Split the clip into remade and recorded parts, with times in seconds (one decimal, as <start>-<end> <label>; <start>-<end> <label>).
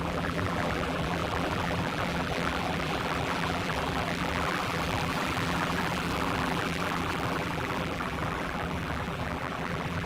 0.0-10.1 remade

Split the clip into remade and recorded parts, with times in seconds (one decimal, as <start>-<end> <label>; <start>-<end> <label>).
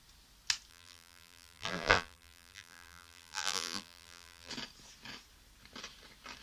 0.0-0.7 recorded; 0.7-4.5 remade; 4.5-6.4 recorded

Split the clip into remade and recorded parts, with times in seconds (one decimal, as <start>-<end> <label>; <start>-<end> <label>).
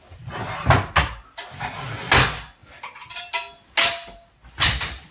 0.0-5.1 recorded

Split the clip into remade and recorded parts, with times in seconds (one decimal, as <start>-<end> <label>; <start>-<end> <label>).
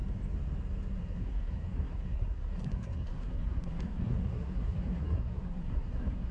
0.0-1.0 recorded; 1.0-6.3 remade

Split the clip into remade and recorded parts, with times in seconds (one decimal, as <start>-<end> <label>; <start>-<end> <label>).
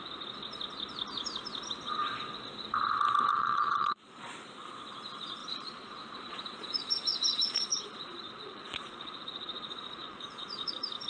0.0-3.3 recorded; 3.3-4.3 remade; 4.3-5.4 recorded; 5.4-10.7 remade; 10.7-11.1 recorded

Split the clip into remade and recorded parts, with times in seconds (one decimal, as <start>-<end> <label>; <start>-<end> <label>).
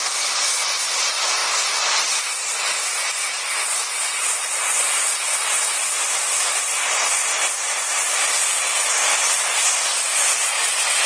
0.0-11.1 recorded